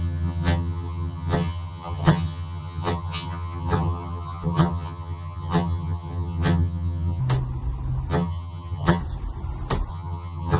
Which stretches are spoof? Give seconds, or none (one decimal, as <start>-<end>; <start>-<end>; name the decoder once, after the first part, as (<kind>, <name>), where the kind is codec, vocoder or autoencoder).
0.0-7.2 (vocoder, HiFi-GAN); 8.1-9.0; 9.9-10.6